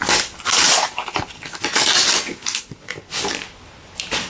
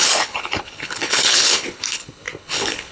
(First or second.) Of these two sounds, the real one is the first